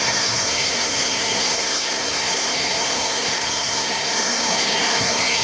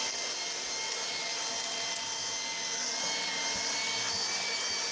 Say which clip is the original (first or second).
second